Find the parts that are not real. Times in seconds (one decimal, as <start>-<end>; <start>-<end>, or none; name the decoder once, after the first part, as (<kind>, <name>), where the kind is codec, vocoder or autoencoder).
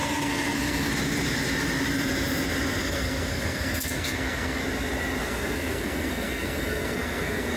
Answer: 0.0-0.9 (codec, SNAC); 2.8-4.6; 5.2-7.6